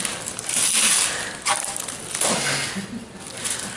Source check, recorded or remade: recorded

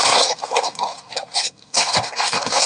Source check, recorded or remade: remade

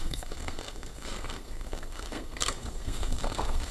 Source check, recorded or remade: remade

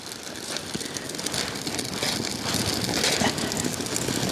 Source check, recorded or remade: recorded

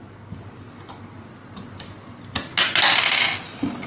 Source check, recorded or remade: recorded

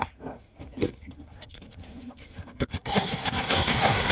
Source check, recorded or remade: remade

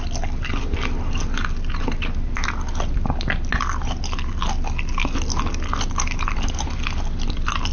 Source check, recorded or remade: recorded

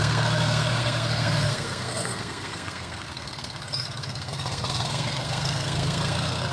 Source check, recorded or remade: remade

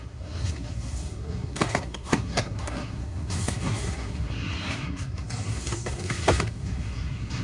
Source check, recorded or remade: remade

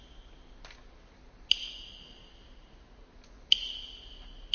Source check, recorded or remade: recorded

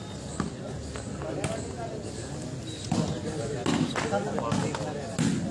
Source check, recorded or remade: recorded